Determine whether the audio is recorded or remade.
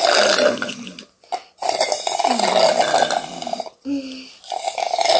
recorded